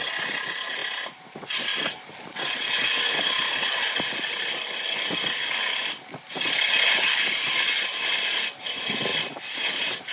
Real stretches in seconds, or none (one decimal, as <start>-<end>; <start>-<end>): 0.0-7.1; 7.7-10.1